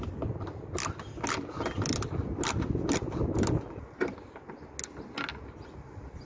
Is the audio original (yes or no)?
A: yes